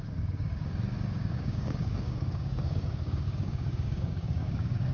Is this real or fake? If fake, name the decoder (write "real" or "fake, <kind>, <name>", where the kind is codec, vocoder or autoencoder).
fake, codec, DAC